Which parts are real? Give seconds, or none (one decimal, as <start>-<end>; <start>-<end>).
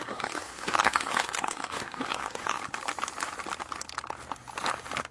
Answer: 2.6-5.1